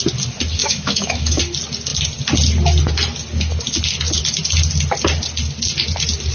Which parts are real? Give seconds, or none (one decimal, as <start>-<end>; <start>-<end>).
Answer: 0.0-0.6; 1.4-6.3